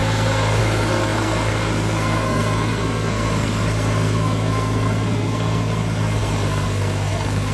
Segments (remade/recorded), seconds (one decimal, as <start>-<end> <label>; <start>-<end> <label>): 0.0-7.5 remade